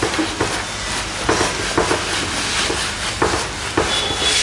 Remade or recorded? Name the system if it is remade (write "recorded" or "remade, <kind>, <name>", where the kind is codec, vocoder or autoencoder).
recorded